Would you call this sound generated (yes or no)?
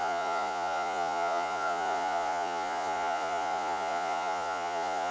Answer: yes